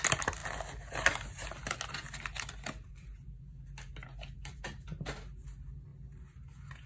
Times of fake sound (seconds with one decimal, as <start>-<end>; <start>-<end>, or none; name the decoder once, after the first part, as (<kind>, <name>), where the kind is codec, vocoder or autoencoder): none